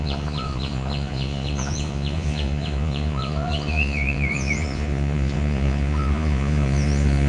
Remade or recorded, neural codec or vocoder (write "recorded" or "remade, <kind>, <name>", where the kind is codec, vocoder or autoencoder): remade, vocoder, Vocos